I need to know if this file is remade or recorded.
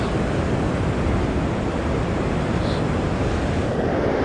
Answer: recorded